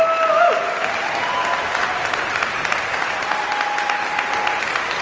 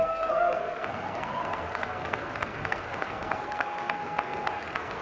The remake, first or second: second